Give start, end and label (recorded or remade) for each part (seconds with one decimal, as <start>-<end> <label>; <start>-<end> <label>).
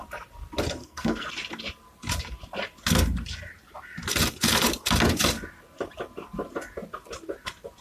0.0-0.8 recorded; 0.8-1.3 remade; 1.3-7.8 recorded